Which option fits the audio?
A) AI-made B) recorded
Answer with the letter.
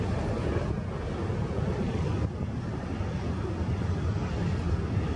B